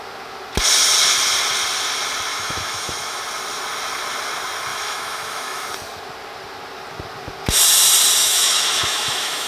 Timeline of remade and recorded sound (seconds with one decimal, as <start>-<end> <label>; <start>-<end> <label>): 0.0-2.3 recorded; 2.3-3.2 remade; 3.2-4.7 recorded; 4.7-5.7 remade; 5.7-8.2 recorded; 8.2-9.5 remade